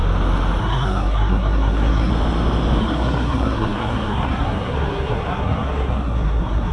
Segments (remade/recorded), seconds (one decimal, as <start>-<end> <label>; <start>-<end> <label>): 0.0-0.6 recorded; 0.6-2.1 remade; 2.1-2.8 recorded; 2.8-6.7 remade